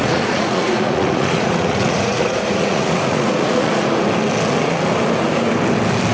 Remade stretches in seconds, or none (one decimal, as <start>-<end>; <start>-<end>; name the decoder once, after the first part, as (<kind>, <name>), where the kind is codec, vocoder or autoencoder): 0.0-3.7 (vocoder, Vocos)